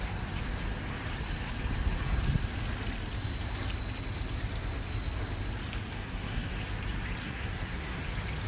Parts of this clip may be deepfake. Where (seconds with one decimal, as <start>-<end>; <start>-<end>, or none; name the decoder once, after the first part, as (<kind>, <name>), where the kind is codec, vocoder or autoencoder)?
5.9-6.5 (codec, SNAC); 7.2-8.0